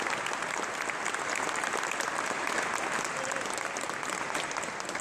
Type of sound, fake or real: real